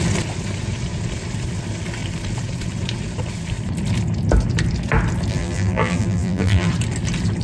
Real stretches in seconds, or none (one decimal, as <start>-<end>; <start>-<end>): 0.0-5.3; 6.7-7.4